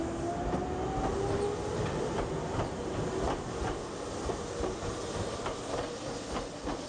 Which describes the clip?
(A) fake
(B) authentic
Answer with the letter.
B